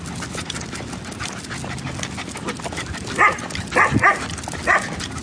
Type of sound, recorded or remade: recorded